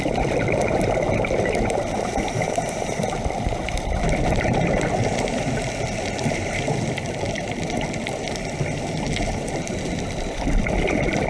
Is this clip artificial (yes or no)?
yes